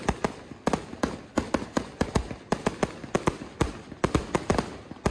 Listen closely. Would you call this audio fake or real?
real